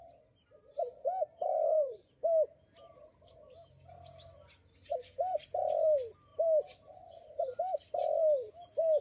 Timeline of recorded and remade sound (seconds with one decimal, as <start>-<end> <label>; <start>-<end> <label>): 0.0-1.5 recorded; 1.5-2.1 remade; 2.1-9.0 recorded

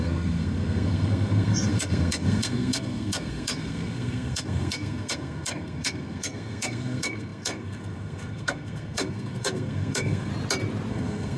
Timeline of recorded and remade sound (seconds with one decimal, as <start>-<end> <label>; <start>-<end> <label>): 0.0-10.3 remade; 10.3-10.9 recorded; 10.9-11.4 remade

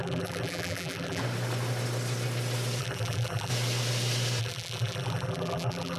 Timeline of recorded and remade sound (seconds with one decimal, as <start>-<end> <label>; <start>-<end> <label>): 0.0-1.2 remade; 1.2-2.8 recorded; 2.8-3.5 remade; 3.5-4.4 recorded; 4.4-6.0 remade

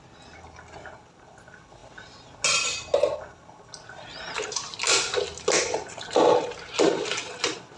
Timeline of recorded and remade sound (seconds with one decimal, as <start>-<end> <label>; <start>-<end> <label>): 0.0-7.8 recorded